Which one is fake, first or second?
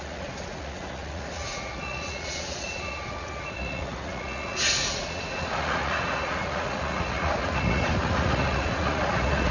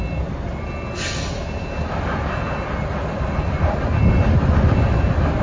first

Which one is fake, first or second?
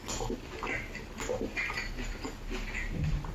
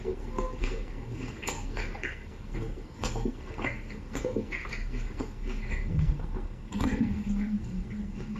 second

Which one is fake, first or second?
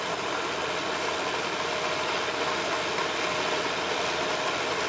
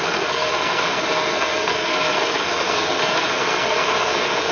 second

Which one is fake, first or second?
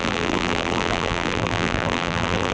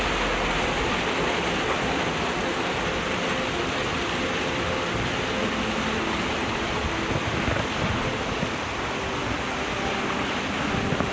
first